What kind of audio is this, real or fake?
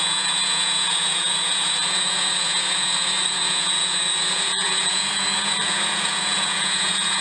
fake